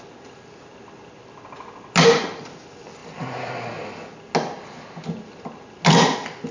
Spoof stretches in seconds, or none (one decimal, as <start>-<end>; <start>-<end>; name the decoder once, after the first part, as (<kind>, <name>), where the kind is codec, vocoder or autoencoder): none